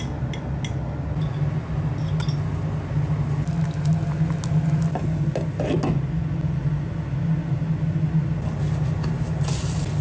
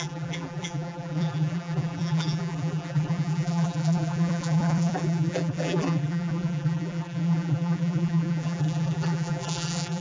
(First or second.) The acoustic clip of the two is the first